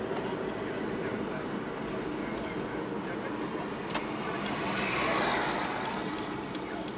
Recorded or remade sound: recorded